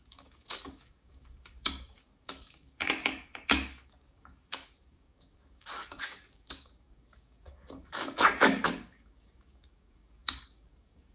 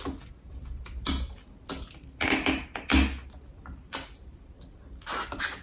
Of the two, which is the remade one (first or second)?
first